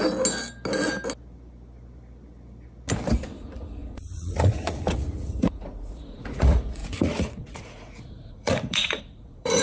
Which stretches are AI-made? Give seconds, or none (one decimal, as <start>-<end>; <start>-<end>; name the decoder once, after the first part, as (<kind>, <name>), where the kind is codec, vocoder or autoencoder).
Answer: 3.4-9.6 (vocoder, Vocos)